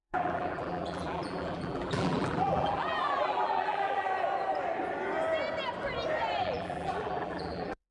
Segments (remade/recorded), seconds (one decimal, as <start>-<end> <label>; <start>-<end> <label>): 0.0-4.1 remade; 4.1-6.4 recorded; 6.4-7.9 remade